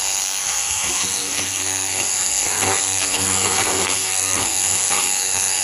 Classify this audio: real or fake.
fake